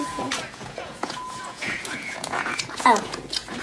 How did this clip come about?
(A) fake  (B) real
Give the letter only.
A